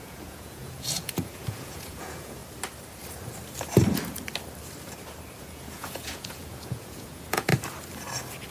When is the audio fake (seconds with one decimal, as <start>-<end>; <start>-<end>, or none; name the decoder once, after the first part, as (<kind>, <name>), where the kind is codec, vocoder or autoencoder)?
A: 0.0-2.4 (vocoder, Vocos); 5.4-7.5